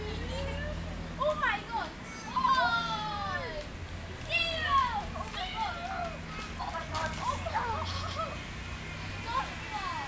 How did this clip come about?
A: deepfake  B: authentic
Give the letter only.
B